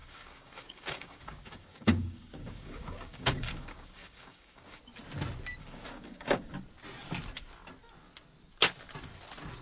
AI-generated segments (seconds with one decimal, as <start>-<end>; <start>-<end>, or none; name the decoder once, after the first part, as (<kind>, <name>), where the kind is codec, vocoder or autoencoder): 0.0-4.8 (codec, DAC); 5.6-6.5